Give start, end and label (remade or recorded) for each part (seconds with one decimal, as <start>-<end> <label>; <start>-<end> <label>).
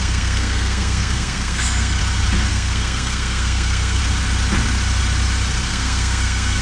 0.0-2.0 remade; 2.0-2.5 recorded; 2.5-4.0 remade; 4.0-5.7 recorded; 5.7-6.6 remade